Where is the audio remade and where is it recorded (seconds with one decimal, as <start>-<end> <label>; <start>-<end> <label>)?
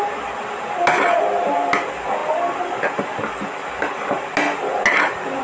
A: 0.0-5.4 recorded